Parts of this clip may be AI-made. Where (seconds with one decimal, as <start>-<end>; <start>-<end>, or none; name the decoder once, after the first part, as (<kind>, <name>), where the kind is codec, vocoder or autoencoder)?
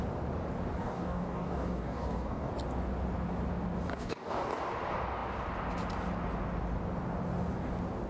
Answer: 0.8-2.5 (codec, DAC); 3.9-4.6